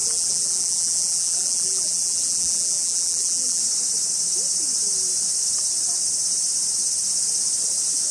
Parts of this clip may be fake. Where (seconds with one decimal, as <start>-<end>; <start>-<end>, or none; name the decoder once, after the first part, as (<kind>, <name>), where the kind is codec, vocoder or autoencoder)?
0.0-3.6 (vocoder, BigVGAN v2)